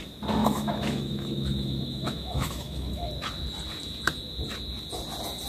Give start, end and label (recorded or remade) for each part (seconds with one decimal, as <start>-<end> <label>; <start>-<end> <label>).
0.0-0.4 recorded; 0.4-3.1 remade; 3.1-5.5 recorded

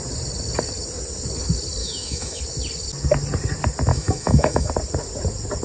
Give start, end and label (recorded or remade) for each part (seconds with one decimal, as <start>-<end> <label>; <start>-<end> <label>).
0.0-1.8 recorded; 1.8-2.4 remade; 2.4-3.9 recorded; 3.9-4.7 remade; 4.7-5.6 recorded

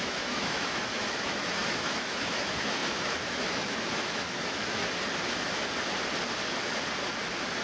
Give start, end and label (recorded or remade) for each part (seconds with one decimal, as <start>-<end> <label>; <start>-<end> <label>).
0.0-4.8 remade; 4.8-7.6 recorded

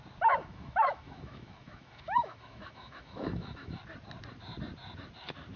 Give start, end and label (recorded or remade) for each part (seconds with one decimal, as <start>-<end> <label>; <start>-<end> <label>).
0.0-0.4 recorded; 0.4-3.8 remade; 3.8-5.6 recorded

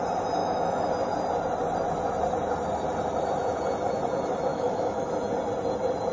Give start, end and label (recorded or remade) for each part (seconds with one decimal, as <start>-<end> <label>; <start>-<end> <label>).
0.0-0.4 recorded; 0.4-0.9 remade; 0.9-4.5 recorded; 4.5-5.1 remade; 5.1-6.1 recorded